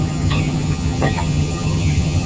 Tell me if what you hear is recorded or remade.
remade